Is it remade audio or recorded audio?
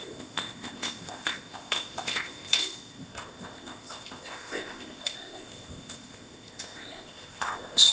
remade